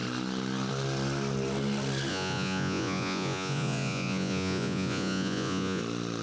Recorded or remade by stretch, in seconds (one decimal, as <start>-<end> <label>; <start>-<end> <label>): 0.0-2.1 recorded; 2.1-5.8 remade; 5.8-6.2 recorded